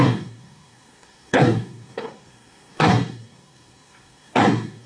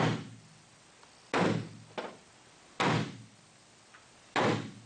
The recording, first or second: second